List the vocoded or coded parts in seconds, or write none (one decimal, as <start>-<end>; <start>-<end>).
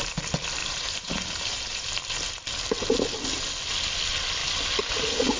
0.6-1.9